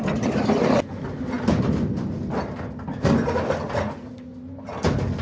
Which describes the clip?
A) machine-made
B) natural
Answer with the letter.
B